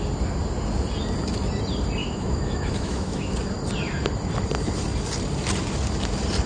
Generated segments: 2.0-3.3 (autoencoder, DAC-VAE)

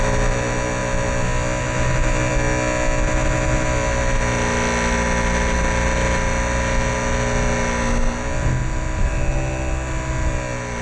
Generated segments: none

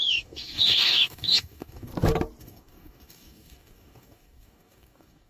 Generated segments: 0.0-1.9 (codec, DAC); 2.4-5.3